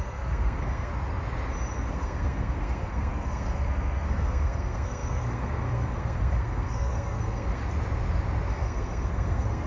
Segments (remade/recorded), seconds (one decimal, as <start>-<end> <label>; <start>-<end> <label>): 0.0-0.9 remade; 0.9-1.9 recorded; 1.9-7.6 remade; 7.6-8.5 recorded; 8.5-9.7 remade